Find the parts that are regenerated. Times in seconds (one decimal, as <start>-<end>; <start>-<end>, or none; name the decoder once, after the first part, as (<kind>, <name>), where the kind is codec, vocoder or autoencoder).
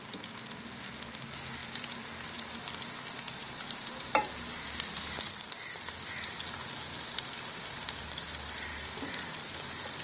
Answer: 3.4-5.9 (vocoder, BigVGAN v2)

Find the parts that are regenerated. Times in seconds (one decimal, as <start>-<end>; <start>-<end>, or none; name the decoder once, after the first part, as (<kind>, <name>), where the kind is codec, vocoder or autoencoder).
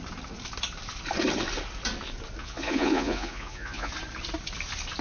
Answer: 2.4-3.9 (vocoder, Vocos)